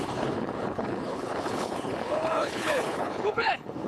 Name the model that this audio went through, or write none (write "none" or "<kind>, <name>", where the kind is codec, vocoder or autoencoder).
codec, HILCodec